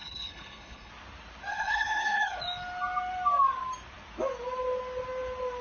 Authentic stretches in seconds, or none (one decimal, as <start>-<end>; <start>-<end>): 0.9-1.5; 2.4-5.6